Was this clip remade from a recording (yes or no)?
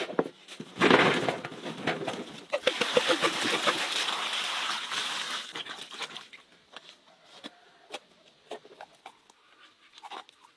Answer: no